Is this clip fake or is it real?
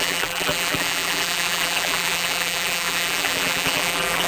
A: fake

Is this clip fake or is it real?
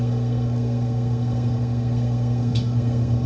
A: fake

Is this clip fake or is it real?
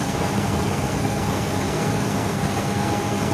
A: fake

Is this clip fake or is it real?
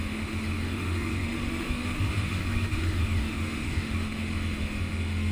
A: fake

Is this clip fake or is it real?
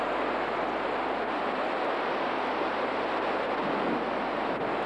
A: real